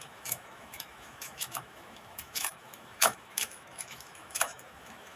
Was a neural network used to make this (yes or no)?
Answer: yes